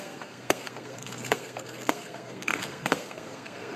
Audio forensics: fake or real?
fake